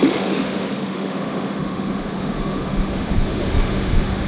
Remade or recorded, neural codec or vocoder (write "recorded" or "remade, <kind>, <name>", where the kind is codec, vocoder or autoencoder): remade, autoencoder, DAC-VAE